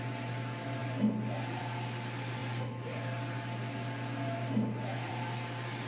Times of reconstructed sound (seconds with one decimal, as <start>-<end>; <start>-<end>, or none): none